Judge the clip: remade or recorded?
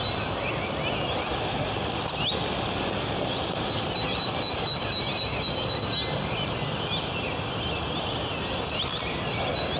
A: recorded